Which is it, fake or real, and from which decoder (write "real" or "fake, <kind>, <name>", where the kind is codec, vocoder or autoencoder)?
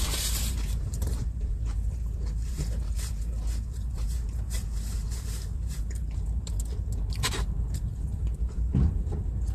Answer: fake, vocoder, BigVGAN v2